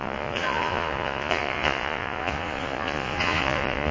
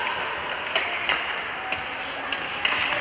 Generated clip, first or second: first